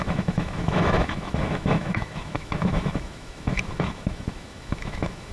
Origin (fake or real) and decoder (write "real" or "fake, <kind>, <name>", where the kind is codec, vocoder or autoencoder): fake, autoencoder, DAC-VAE